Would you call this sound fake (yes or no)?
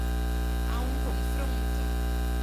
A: no